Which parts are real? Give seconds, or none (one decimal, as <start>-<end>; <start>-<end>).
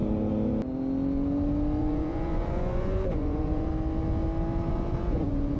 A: 0.0-1.8; 3.7-4.7